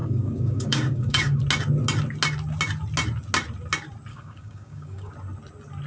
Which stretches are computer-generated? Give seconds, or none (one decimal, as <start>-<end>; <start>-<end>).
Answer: 0.0-1.4; 4.1-5.1